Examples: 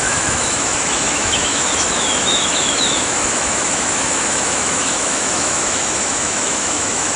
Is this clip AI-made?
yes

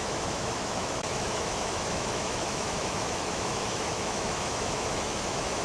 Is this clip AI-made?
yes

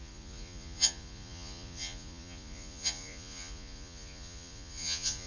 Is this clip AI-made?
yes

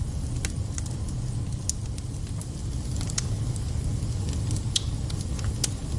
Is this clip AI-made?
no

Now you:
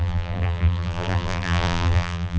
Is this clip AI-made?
yes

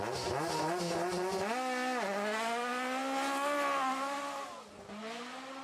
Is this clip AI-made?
no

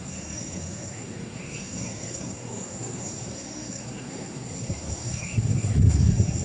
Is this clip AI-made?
yes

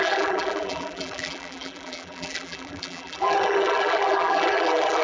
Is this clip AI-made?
yes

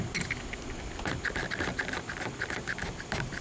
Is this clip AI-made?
no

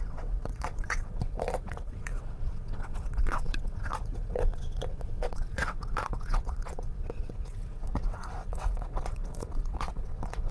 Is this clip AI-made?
yes